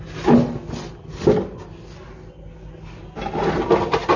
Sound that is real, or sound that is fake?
real